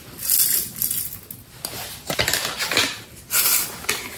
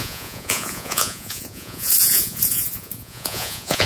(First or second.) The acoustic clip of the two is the first